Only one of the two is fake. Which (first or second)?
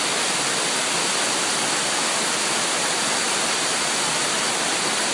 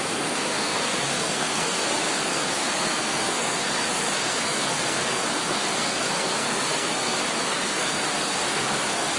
second